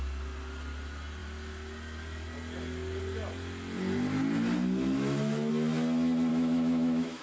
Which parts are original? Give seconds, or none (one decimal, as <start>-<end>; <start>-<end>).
0.0-6.3